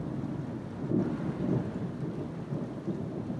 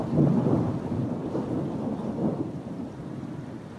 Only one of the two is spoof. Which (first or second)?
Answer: second